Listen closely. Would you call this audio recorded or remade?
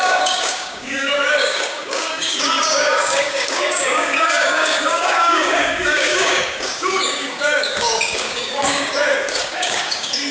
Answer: remade